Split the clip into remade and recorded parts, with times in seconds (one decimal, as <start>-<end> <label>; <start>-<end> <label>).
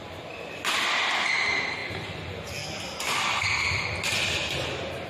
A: 0.0-5.1 recorded